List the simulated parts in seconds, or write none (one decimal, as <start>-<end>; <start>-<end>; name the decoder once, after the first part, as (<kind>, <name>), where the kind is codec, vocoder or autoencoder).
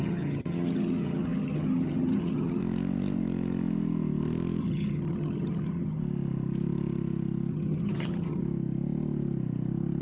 0.0-2.6 (vocoder, HiFi-GAN); 4.6-6.0; 7.5-8.4